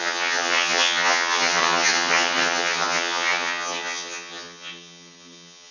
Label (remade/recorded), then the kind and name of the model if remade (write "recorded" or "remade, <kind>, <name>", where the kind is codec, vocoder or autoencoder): remade, vocoder, HiFi-GAN